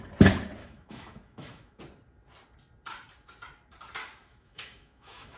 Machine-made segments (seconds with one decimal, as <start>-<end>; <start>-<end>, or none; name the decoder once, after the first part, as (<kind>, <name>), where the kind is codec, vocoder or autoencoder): 0.6-1.8 (autoencoder, DAC-VAE); 4.0-5.4